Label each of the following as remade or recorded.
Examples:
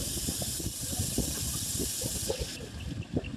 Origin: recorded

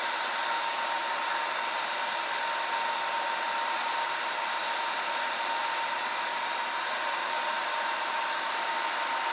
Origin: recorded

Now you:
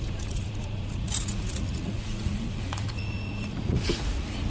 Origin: remade